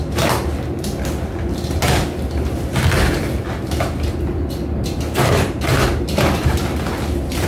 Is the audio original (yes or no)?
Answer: yes